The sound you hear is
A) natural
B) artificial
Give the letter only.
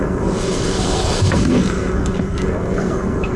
B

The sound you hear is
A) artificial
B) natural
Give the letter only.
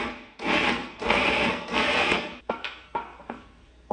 A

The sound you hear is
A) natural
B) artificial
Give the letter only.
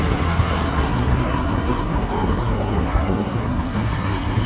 B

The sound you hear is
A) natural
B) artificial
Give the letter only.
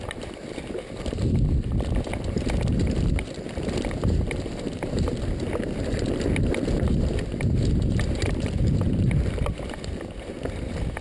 A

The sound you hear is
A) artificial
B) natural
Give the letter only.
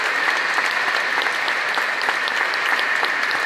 B